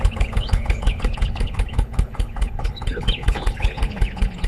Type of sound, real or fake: fake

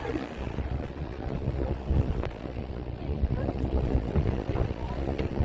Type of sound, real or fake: fake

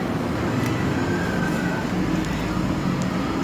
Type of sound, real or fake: real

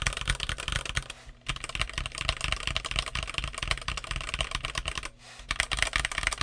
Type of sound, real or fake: real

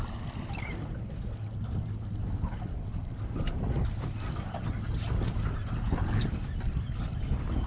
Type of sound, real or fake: real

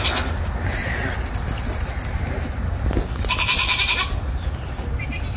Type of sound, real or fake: real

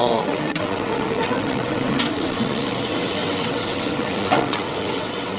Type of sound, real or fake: fake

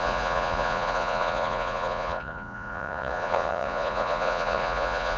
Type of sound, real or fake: fake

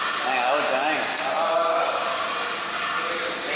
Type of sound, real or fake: real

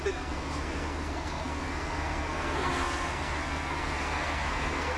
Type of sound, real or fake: fake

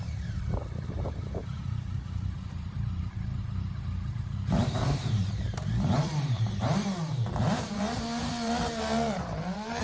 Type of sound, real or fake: fake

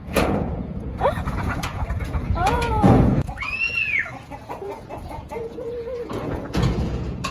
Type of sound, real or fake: fake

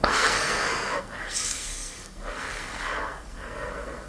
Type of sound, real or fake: fake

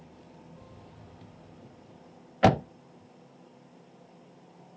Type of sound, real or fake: real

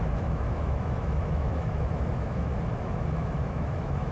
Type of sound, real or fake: fake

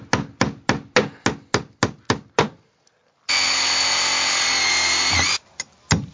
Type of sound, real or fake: real